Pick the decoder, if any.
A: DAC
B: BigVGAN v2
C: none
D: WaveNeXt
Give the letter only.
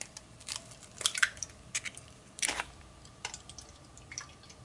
B